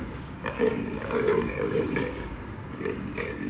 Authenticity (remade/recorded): remade